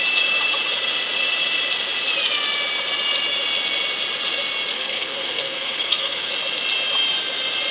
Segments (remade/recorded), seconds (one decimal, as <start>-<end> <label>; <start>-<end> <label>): 0.0-4.7 recorded; 4.7-6.3 remade; 6.3-7.7 recorded